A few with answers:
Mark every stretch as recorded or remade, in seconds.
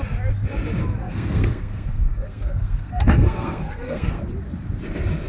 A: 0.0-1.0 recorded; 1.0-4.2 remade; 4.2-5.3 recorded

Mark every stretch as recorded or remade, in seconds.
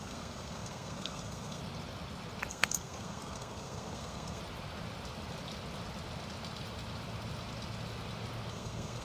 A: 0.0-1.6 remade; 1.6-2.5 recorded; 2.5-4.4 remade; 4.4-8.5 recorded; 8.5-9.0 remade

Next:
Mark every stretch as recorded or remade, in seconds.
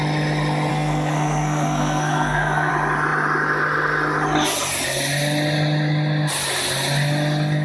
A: 0.0-0.7 recorded; 0.7-2.7 remade; 2.7-7.6 recorded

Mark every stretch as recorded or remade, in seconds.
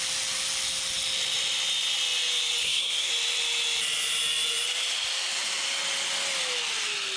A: 0.0-2.6 recorded; 2.6-3.1 remade; 3.1-7.2 recorded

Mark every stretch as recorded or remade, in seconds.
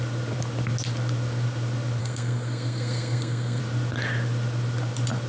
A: 0.0-2.0 recorded; 2.0-3.6 remade; 3.6-5.3 recorded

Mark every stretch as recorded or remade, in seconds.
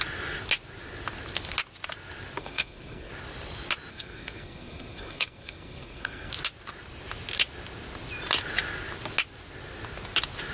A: 0.0-2.4 recorded; 2.4-3.1 remade; 3.1-3.9 recorded; 3.9-6.3 remade; 6.3-10.5 recorded